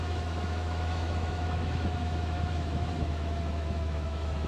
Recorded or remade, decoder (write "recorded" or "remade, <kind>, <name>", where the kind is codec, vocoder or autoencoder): remade, autoencoder, DAC-VAE